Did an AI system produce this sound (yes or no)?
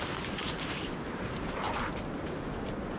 no